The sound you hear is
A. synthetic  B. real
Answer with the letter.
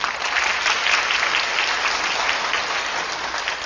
B